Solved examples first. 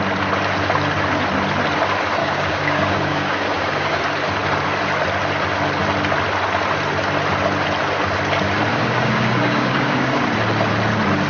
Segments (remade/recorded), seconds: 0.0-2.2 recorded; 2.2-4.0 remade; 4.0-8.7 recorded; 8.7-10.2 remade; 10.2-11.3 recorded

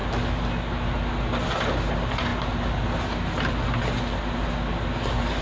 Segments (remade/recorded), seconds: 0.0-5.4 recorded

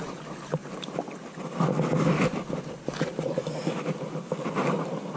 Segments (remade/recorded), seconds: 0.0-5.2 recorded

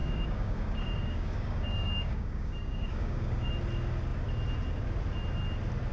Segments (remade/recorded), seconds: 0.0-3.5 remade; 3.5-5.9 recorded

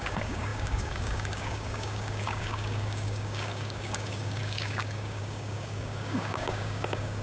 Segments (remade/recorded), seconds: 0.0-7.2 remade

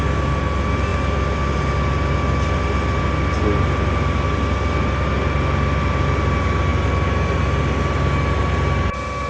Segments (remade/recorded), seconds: 0.0-9.3 recorded